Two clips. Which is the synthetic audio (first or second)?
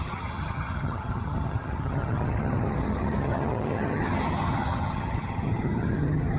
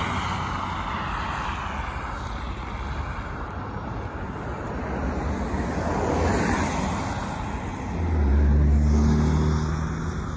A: first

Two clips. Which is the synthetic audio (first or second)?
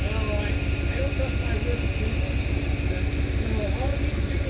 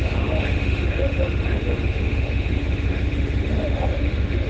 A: second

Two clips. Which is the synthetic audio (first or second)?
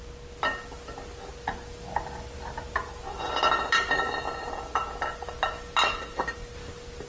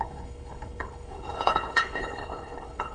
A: second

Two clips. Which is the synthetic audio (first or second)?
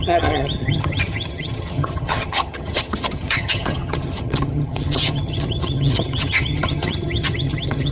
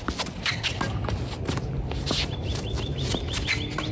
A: first